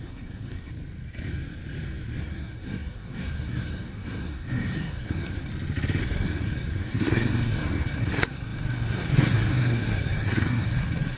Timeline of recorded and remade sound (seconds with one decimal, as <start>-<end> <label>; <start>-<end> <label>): 0.0-0.7 remade; 0.7-2.2 recorded; 2.2-5.5 remade; 5.5-6.0 recorded; 6.0-11.2 remade